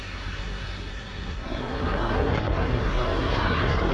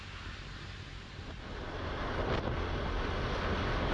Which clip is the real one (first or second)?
second